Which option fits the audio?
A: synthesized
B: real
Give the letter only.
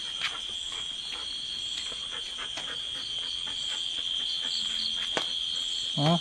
B